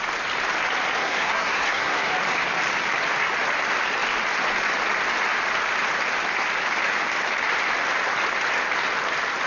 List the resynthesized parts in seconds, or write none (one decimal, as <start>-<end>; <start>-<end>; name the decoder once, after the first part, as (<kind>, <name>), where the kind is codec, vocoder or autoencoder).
1.0-2.1 (codec, SNAC)